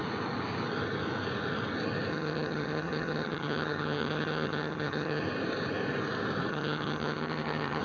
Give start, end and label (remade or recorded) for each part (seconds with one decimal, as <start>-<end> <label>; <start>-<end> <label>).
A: 0.0-2.1 recorded; 2.1-5.2 remade; 5.2-6.5 recorded; 6.5-7.8 remade